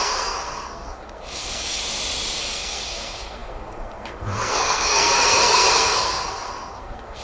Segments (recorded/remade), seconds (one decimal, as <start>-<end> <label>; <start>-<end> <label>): 0.0-1.8 remade; 1.8-2.4 recorded; 2.4-7.2 remade